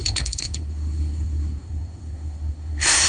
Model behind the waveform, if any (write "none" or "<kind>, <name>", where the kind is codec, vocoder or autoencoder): codec, SNAC